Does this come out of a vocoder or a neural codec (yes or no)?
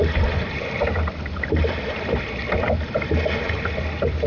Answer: no